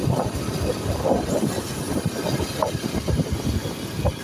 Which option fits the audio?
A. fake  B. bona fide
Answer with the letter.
B